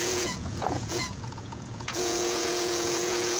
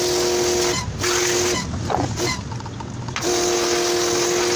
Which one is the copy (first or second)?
first